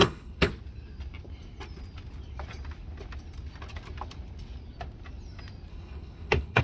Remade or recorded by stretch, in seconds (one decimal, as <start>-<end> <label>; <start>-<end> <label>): 0.0-0.5 remade; 0.5-5.7 recorded; 5.7-6.6 remade